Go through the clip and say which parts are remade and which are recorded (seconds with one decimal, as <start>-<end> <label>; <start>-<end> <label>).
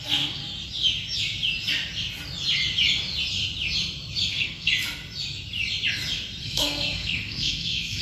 0.0-0.4 remade; 0.4-4.3 recorded; 4.3-4.7 remade; 4.7-6.4 recorded; 6.4-8.0 remade